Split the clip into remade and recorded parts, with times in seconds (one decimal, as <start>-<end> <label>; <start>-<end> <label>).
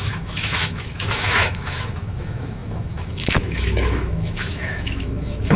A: 0.0-5.6 remade